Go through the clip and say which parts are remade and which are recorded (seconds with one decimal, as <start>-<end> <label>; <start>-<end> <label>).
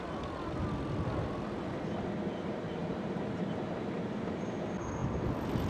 0.0-2.8 recorded; 2.8-4.0 remade; 4.0-5.7 recorded